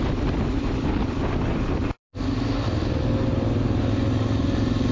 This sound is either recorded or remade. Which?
recorded